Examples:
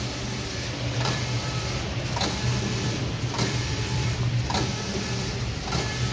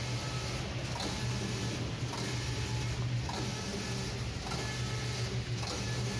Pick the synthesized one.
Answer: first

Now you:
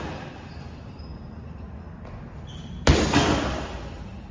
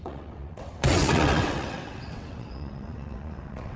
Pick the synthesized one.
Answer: second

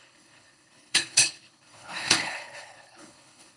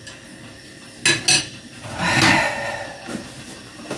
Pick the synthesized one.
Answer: first